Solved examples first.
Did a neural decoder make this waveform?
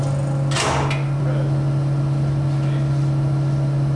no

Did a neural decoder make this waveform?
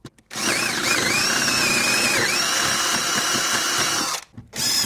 no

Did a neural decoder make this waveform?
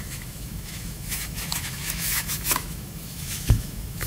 yes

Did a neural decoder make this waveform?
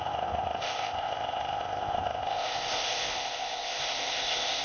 yes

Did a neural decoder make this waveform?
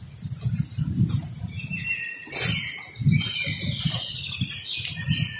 no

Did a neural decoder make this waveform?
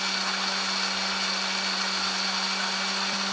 no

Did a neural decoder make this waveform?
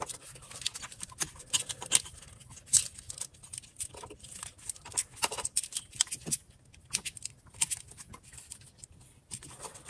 no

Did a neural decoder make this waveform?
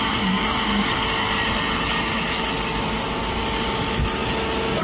no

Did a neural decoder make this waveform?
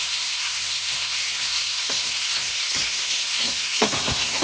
yes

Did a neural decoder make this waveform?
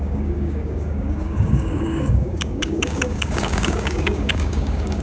yes